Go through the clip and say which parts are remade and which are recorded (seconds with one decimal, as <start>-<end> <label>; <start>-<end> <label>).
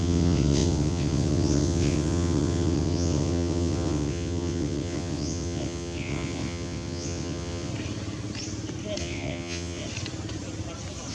0.0-7.7 remade; 7.7-9.0 recorded; 9.0-9.8 remade; 9.8-11.1 recorded